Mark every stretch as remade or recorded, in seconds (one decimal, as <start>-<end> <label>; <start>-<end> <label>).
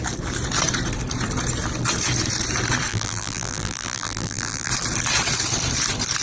0.0-2.9 recorded; 2.9-4.7 remade; 4.7-6.2 recorded